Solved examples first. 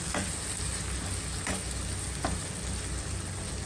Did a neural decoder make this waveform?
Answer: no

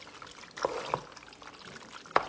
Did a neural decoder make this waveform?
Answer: no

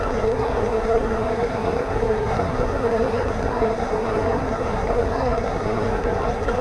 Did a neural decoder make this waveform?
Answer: yes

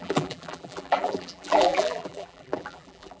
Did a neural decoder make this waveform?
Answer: yes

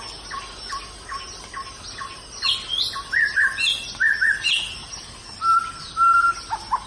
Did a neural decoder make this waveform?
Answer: no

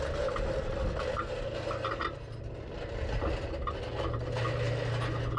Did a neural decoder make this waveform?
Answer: no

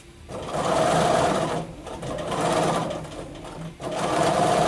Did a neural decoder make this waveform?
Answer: no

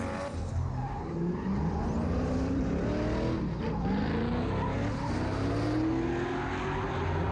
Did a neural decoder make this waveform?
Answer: no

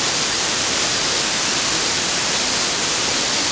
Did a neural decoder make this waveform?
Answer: yes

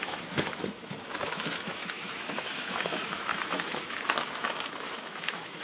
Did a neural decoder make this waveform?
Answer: yes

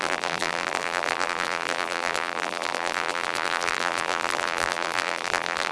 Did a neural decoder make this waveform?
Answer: yes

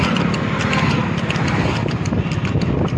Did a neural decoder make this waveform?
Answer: no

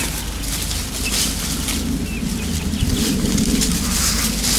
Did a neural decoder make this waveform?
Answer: no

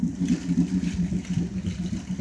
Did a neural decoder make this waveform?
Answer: no